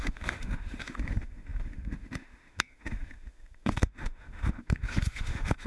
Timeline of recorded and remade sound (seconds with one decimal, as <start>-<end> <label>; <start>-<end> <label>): 0.0-5.7 remade